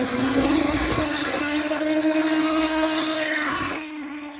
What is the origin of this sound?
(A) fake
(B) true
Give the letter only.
A